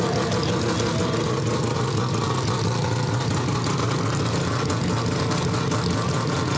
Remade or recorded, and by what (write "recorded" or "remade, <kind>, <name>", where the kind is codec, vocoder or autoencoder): recorded